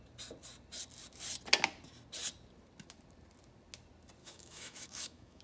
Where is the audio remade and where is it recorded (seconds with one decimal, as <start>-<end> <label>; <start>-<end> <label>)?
0.0-4.2 recorded; 4.2-5.4 remade